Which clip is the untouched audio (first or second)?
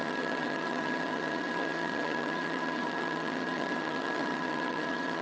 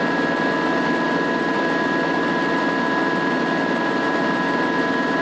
second